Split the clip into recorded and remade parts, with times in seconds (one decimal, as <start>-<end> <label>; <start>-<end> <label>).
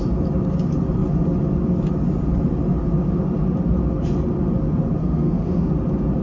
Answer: 0.0-5.0 recorded; 5.0-5.7 remade; 5.7-6.2 recorded